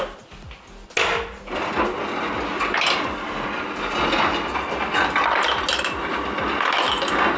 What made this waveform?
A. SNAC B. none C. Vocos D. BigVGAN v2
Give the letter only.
B